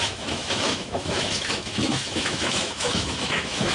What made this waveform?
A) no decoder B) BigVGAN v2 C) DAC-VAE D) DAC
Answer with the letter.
C